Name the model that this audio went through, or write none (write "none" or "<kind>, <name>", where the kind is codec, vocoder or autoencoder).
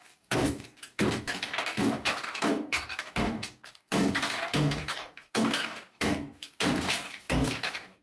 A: codec, DAC